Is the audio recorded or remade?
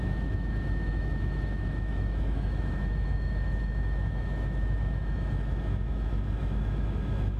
remade